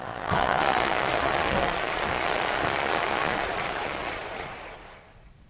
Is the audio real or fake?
fake